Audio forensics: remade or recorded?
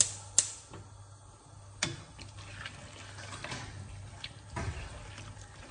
recorded